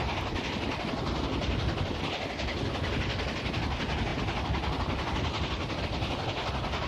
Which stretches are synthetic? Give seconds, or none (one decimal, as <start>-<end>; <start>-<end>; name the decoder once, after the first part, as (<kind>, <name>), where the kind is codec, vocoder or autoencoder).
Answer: none